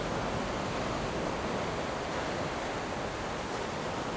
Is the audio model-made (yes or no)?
no